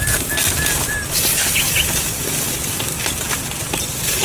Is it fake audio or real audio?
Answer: real